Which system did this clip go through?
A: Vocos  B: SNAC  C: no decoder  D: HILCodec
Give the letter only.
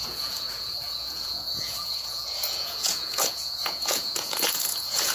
A